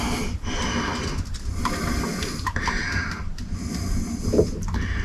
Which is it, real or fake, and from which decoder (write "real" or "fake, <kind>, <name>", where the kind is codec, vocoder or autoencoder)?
real